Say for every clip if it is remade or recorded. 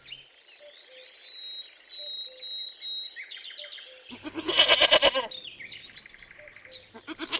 recorded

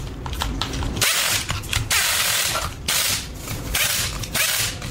remade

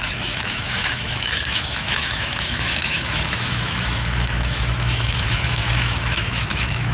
remade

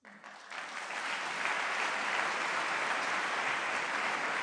remade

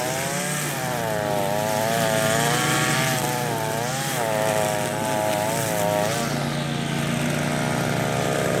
recorded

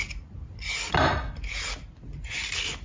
recorded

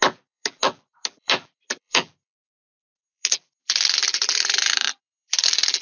remade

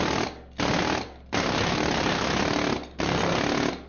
recorded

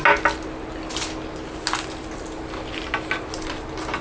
recorded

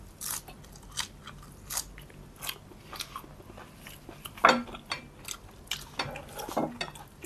recorded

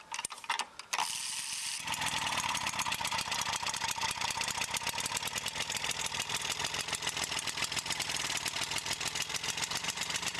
remade